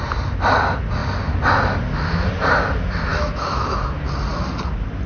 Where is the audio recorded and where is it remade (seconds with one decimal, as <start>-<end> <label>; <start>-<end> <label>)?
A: 0.0-3.1 recorded; 3.1-3.8 remade; 3.8-5.1 recorded